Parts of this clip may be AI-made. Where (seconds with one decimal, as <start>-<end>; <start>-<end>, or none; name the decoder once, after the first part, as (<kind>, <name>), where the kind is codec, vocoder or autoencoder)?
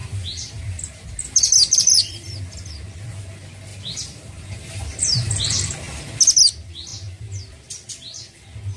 0.0-1.1 (vocoder, BigVGAN v2); 3.7-6.0